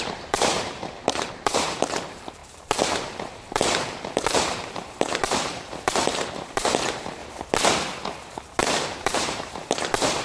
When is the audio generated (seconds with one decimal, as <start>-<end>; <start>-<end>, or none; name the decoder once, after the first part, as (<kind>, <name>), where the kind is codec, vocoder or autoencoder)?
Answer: 0.0-7.2 (vocoder, BigVGAN v2); 8.6-10.2